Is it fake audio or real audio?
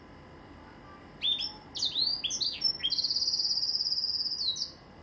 real